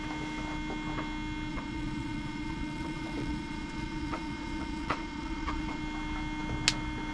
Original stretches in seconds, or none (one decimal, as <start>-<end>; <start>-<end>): 0.0-1.5; 5.8-7.1